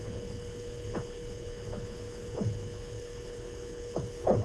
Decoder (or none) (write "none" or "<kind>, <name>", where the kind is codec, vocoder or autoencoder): codec, HILCodec